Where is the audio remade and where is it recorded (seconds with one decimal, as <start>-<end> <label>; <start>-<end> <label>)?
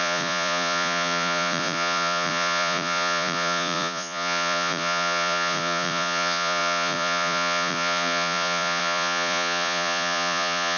0.0-10.8 remade